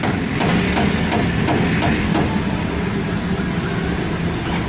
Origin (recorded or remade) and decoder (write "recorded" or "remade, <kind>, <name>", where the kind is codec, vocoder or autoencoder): recorded